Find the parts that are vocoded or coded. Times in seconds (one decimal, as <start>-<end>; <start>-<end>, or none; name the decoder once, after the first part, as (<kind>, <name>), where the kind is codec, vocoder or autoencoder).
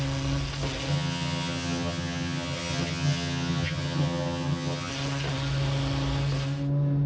0.9-4.9 (vocoder, HiFi-GAN)